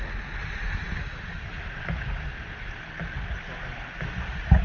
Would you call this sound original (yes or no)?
yes